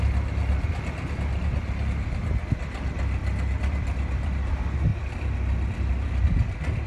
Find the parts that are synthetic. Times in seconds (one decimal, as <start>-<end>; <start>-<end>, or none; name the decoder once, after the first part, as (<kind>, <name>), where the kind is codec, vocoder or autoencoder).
3.2-4.5 (vocoder, BigVGAN v2); 4.9-6.2